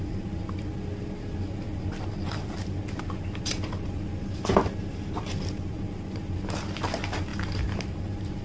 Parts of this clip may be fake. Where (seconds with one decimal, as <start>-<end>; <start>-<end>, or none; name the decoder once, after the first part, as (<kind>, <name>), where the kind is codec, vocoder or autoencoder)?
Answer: none

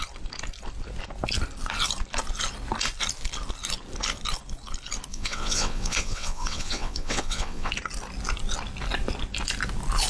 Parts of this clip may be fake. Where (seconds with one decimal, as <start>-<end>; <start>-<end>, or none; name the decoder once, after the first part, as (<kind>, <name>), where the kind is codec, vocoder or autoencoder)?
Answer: 5.1-7.7 (vocoder, WaveNeXt)

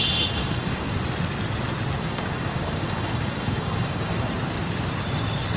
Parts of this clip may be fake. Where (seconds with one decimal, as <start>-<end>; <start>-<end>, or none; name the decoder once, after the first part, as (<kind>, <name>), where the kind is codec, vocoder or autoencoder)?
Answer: 0.4-1.0 (codec, DAC); 2.0-4.3

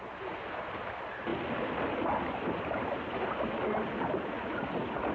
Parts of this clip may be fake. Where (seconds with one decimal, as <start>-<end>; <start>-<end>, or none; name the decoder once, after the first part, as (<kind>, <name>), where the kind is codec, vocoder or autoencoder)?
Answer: none